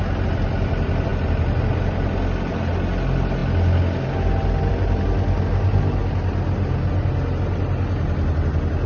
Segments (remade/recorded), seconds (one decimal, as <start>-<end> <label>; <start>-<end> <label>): 0.0-8.9 recorded